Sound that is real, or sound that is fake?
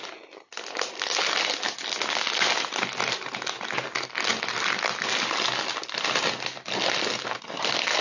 real